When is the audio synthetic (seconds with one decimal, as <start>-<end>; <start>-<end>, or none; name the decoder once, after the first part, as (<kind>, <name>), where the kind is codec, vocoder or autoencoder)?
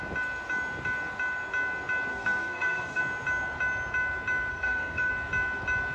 2.1-3.0 (codec, SNAC); 4.5-5.1